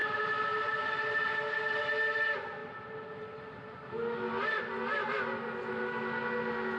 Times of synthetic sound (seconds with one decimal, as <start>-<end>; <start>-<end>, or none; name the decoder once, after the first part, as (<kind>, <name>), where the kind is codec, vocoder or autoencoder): 0.0-0.9 (vocoder, BigVGAN v2)